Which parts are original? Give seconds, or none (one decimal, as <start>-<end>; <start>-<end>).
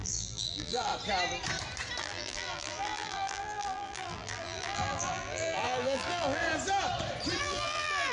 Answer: 0.9-2.0; 6.4-7.4